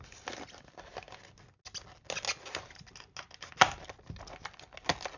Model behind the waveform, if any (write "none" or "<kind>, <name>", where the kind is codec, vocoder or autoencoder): none